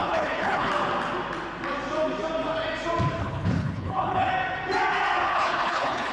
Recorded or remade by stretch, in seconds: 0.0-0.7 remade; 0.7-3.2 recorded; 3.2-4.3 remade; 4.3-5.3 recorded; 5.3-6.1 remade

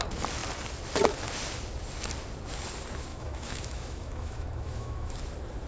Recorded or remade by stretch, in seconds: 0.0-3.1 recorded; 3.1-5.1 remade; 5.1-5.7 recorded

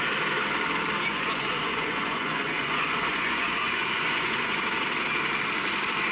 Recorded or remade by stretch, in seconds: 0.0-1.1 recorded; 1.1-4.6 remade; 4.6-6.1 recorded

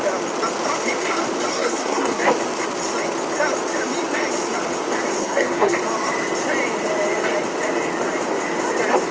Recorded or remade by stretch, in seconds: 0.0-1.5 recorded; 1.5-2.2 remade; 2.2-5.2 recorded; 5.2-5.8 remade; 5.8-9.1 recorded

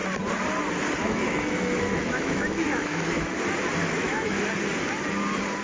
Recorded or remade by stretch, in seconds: 0.0-1.0 recorded; 1.0-3.3 remade; 3.3-3.8 recorded; 3.8-4.5 remade; 4.5-5.6 recorded

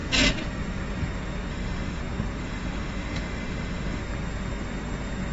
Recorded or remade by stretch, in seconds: 0.0-1.5 recorded; 1.5-2.0 remade; 2.0-2.4 recorded; 2.4-4.0 remade; 4.0-5.3 recorded